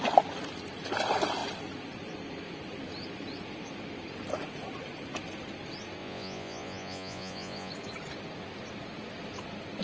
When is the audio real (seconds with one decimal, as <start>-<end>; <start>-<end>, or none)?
0.0-6.0; 7.7-9.8